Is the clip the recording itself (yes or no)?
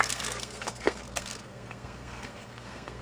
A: no